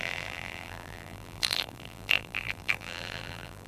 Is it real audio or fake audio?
fake